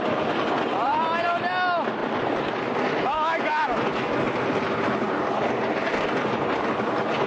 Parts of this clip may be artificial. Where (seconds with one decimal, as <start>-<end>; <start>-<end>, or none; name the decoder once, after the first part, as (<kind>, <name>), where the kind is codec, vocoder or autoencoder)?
2.0-4.4 (vocoder, BigVGAN v2); 5.8-6.4